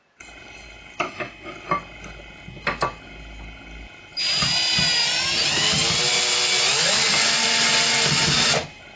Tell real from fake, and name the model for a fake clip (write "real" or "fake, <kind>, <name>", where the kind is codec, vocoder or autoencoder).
real